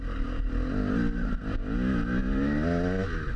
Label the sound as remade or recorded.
recorded